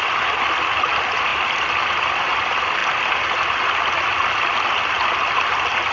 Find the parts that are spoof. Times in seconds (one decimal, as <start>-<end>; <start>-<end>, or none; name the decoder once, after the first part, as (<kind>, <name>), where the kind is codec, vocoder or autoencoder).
none